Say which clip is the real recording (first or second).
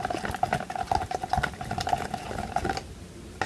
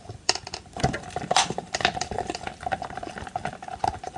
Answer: first